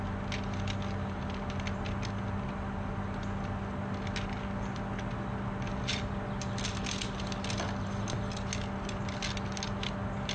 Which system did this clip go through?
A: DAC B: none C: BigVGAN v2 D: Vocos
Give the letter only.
B